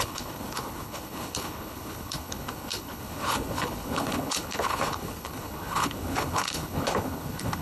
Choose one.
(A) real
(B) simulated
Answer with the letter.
B